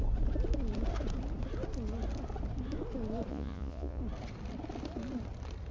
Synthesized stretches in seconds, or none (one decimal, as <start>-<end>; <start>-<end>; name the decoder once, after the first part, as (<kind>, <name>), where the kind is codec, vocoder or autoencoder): 3.3-4.0 (vocoder, Vocos)